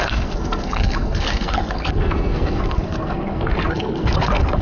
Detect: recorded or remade remade